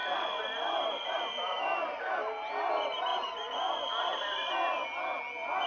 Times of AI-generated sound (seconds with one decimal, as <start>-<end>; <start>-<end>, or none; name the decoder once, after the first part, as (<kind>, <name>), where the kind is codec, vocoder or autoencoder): 0.0-2.1 (vocoder, BigVGAN v2); 3.1-3.7